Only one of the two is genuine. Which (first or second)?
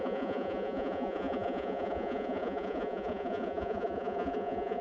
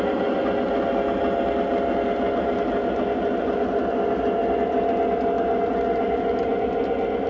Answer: second